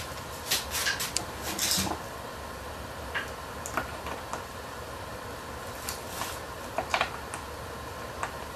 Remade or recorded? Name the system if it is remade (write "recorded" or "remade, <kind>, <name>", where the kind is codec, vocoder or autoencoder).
recorded